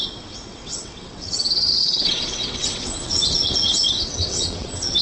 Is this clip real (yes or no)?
no